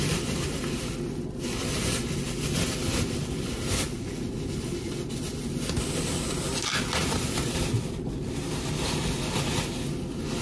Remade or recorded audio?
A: recorded